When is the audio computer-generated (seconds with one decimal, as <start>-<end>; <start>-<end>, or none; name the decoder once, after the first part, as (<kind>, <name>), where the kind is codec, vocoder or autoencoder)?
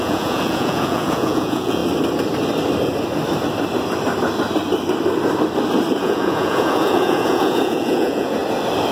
0.0-1.8 (vocoder, Vocos); 6.0-8.4